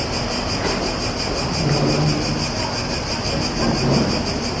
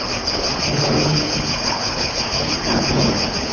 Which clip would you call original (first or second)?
first